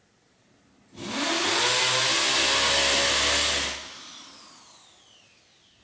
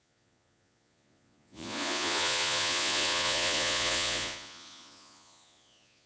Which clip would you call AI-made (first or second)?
second